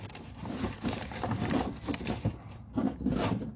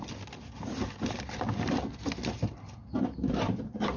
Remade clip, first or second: first